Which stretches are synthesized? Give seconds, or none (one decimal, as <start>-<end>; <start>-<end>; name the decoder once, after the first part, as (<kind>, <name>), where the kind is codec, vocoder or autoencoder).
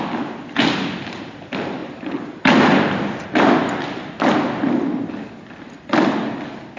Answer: none